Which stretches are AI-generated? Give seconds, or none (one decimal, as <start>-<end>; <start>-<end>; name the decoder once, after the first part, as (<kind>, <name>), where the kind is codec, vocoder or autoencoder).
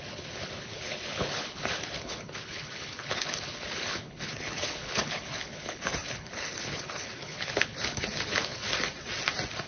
0.0-8.7 (codec, HILCodec)